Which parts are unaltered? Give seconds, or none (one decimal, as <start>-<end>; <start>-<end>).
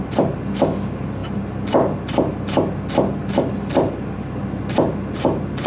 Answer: 0.0-5.7